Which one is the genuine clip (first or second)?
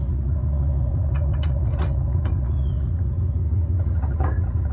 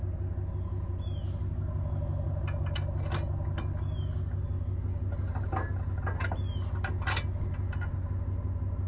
second